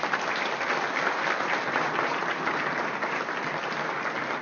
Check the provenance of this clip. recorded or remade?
recorded